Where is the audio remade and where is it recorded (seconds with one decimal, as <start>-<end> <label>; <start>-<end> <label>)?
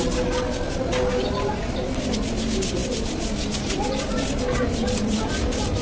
0.0-5.8 recorded